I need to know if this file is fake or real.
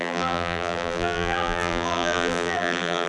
fake